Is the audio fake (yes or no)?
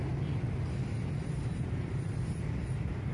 no